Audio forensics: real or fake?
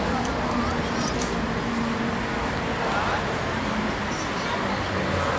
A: real